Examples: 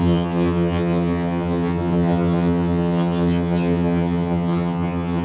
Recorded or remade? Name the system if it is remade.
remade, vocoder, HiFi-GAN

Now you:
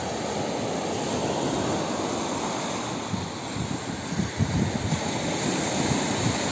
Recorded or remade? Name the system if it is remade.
recorded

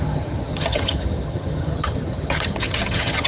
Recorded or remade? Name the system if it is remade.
remade, vocoder, HiFi-GAN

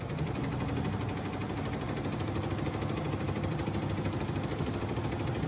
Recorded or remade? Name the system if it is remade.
recorded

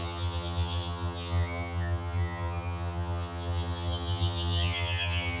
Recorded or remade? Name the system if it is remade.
remade, vocoder, HiFi-GAN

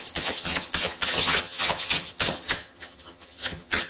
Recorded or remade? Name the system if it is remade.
remade, vocoder, HiFi-GAN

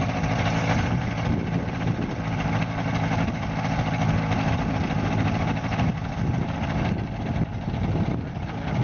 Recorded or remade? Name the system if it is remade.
recorded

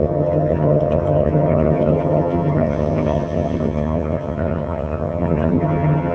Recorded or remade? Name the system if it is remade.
remade, vocoder, HiFi-GAN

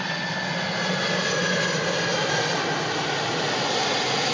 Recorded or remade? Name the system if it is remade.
recorded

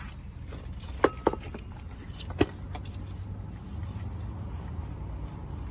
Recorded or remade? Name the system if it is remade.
recorded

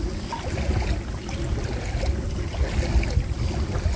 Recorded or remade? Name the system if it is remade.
recorded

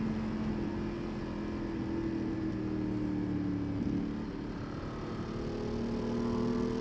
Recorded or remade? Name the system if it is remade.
recorded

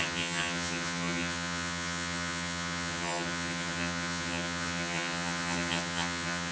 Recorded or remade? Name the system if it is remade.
remade, vocoder, HiFi-GAN